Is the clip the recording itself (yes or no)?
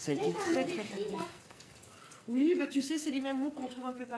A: no